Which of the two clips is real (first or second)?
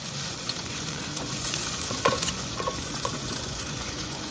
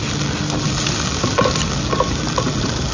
second